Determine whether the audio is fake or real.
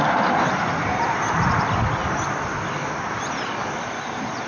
real